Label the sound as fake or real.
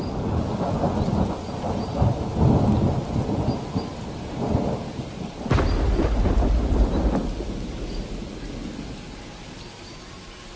real